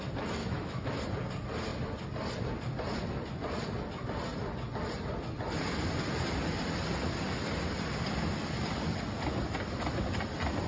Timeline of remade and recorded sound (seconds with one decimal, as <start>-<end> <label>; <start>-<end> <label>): 0.0-0.4 recorded; 0.4-1.0 remade; 1.0-10.7 recorded